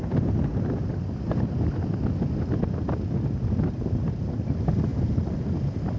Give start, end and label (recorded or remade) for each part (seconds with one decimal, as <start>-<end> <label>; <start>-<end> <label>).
0.0-4.9 recorded; 4.9-6.0 remade